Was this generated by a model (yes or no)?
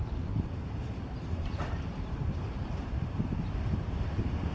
yes